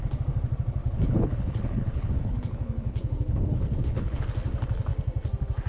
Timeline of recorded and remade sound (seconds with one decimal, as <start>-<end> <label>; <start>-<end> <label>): 0.0-0.8 recorded; 0.8-4.2 remade; 4.2-5.7 recorded

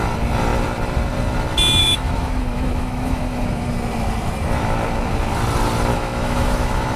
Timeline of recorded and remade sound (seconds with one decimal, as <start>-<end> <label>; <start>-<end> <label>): 0.0-1.8 recorded; 1.8-3.7 remade; 3.7-5.9 recorded; 5.9-7.0 remade

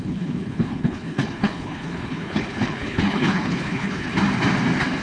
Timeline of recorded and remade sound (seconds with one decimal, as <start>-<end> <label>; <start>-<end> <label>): 0.0-4.1 remade; 4.1-5.0 recorded

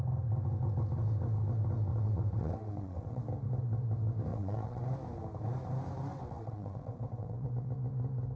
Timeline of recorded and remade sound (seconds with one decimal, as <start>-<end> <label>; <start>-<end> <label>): 0.0-1.9 recorded; 1.9-3.2 remade; 3.2-4.3 recorded; 4.3-4.8 remade; 4.8-6.1 recorded; 6.1-7.7 remade; 7.7-8.4 recorded

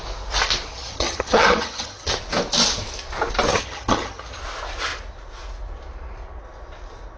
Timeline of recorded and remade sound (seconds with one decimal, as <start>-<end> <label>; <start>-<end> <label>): 0.0-0.7 recorded; 0.7-2.1 remade; 2.1-3.5 recorded; 3.5-4.4 remade; 4.4-7.2 recorded

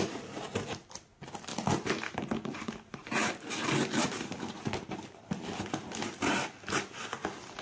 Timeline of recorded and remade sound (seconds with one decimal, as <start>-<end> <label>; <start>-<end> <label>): 0.0-7.6 recorded